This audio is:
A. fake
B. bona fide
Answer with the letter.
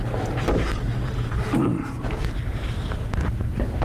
A